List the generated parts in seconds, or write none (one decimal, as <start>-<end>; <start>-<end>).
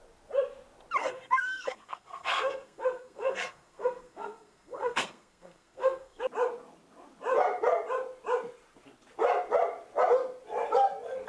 1.0-6.2